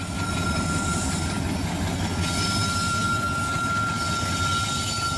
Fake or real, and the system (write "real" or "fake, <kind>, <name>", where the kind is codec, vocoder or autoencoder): real